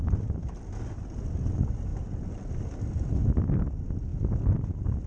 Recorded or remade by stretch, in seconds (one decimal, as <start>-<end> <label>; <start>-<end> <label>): 0.0-5.1 recorded